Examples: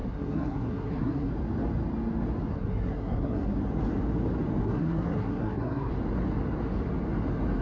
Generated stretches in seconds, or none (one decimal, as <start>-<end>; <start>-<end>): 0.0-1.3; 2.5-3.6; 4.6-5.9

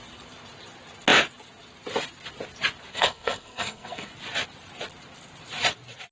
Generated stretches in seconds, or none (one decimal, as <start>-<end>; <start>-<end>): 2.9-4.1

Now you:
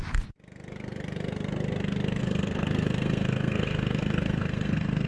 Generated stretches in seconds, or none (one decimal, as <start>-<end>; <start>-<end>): 2.2-5.1

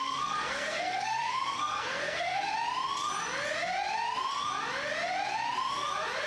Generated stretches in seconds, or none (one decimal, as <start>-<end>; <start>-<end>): 0.0-2.5

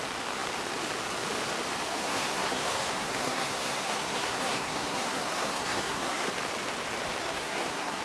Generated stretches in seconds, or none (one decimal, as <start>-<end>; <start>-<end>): 2.0-6.3; 7.2-8.0

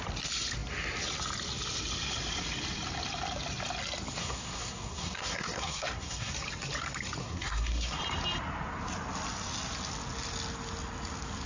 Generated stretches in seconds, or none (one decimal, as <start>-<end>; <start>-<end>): 4.2-6.3; 7.2-8.0

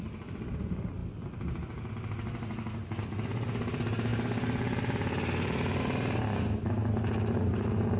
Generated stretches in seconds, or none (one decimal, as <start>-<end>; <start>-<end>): none

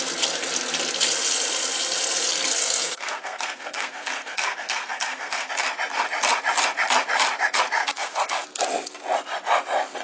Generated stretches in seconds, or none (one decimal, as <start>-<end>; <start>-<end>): 2.6-5.5; 7.8-8.3